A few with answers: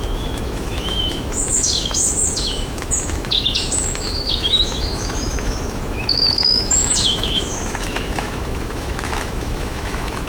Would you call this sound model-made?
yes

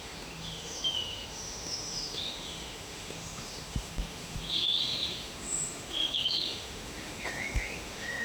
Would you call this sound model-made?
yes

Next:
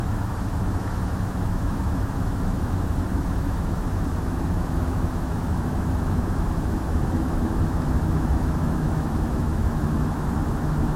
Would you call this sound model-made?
yes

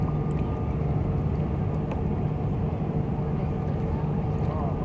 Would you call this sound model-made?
no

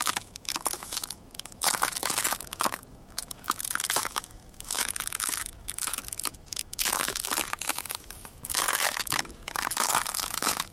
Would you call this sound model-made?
yes